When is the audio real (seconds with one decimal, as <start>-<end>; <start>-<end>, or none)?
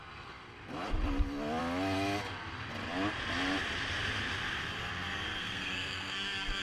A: 0.0-5.4